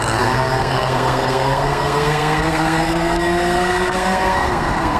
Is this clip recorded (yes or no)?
no